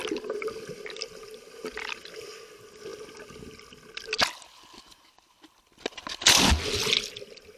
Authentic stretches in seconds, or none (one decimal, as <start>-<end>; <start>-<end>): 0.0-7.6